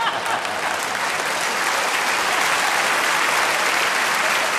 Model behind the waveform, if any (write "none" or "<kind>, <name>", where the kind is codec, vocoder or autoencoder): none